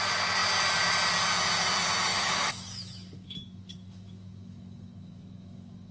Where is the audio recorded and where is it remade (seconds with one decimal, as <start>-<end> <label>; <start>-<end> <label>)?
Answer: 0.0-2.1 recorded; 2.1-5.9 remade